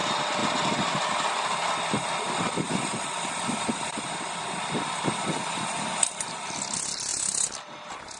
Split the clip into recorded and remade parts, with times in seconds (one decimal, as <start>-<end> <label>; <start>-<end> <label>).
0.0-0.4 recorded; 0.4-4.6 remade; 4.6-7.1 recorded; 7.1-7.6 remade; 7.6-8.2 recorded